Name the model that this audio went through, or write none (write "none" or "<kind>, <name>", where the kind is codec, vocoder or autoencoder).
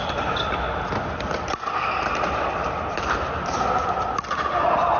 none